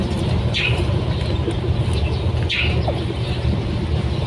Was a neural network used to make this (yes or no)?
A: no